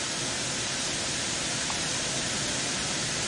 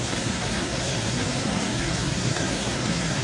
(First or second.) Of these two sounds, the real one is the first